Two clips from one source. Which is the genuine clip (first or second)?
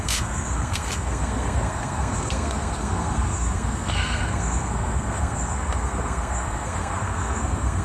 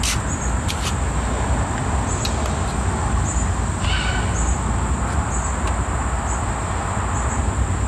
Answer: second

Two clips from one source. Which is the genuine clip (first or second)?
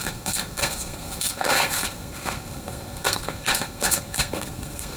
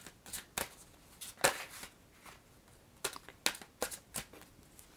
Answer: second